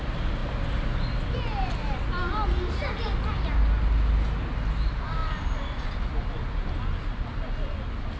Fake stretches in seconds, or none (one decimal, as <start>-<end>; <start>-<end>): none